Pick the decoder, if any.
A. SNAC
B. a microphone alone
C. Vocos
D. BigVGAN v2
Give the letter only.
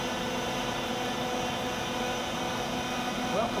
D